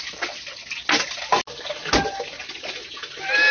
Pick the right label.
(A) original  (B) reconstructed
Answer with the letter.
A